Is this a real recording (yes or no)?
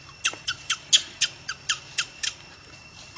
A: yes